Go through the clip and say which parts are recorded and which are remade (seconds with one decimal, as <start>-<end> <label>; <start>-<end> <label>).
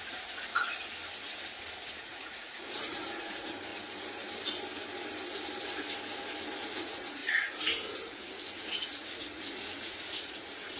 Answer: 0.0-0.5 remade; 0.5-2.0 recorded; 2.0-3.7 remade; 3.7-6.5 recorded; 6.5-10.8 remade